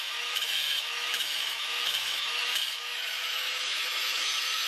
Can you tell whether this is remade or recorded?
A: remade